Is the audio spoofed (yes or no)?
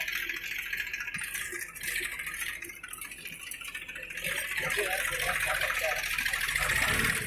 no